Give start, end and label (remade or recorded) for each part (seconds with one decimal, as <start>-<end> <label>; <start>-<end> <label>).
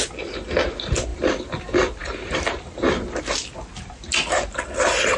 0.0-5.2 recorded